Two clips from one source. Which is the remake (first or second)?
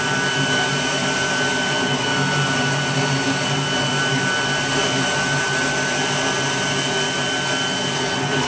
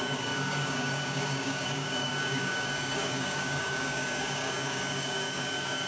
second